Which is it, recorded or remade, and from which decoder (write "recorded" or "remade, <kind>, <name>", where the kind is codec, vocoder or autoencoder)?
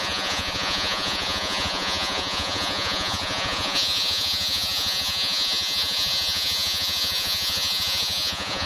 remade, vocoder, Vocos